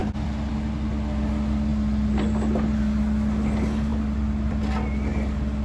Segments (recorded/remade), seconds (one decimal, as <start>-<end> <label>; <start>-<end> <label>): 0.0-0.5 remade; 0.5-3.9 recorded; 3.9-4.6 remade; 4.6-5.6 recorded